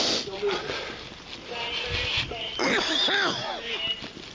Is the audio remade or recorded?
recorded